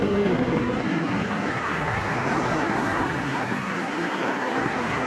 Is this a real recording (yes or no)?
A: no